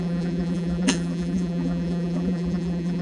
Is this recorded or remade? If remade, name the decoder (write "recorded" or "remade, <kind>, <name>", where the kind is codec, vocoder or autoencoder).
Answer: remade, vocoder, BigVGAN v2